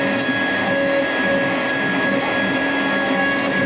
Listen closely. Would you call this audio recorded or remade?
recorded